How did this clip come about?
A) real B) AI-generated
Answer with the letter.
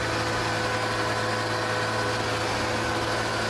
A